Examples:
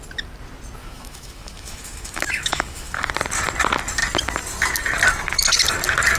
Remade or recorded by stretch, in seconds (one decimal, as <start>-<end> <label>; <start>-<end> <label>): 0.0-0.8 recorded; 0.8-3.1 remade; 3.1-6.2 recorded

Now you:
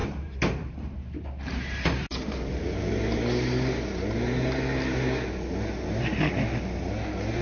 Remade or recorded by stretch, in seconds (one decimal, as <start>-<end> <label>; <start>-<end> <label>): 0.0-2.8 remade; 2.8-7.4 recorded

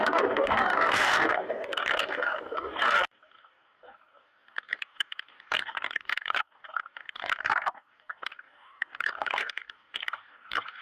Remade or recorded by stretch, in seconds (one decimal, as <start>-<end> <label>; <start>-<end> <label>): 0.0-10.8 remade

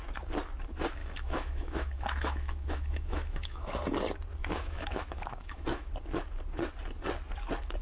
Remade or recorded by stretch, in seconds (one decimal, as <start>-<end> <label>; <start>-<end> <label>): 0.0-1.0 recorded; 1.0-3.7 remade; 3.7-4.4 recorded; 4.4-5.9 remade; 5.9-7.8 recorded

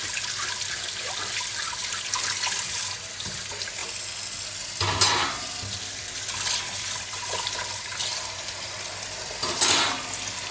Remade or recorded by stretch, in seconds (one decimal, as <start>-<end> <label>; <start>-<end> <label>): 0.0-8.1 recorded; 8.1-8.7 remade; 8.7-10.5 recorded

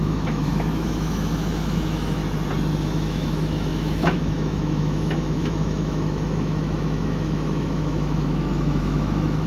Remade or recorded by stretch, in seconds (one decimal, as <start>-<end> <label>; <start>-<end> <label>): 0.0-2.2 remade; 2.2-2.8 recorded; 2.8-9.5 remade

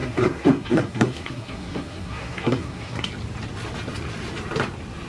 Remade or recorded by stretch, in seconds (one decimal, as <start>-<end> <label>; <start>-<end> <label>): 0.0-3.1 remade; 3.1-5.1 recorded